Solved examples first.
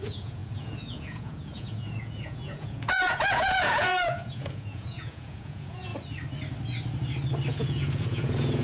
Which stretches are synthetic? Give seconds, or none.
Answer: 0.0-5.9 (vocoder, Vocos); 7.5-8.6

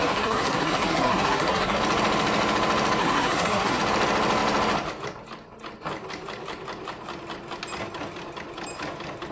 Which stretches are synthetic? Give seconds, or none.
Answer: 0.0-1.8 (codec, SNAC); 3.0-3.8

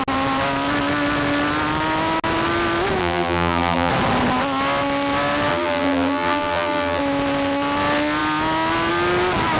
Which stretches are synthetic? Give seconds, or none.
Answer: 3.0-3.9 (vocoder, BigVGAN v2); 5.5-7.0

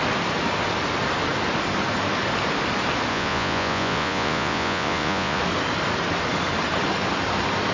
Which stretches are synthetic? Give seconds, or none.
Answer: 3.1-5.4 (vocoder, Vocos)

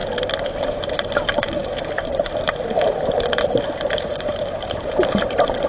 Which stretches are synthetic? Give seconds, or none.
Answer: 0.9-5.7 (vocoder, BigVGAN v2)

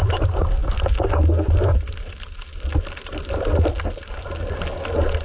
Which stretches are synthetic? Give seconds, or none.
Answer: none

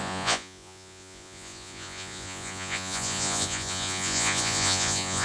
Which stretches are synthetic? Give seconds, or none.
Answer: 0.0-5.2 (vocoder, Vocos)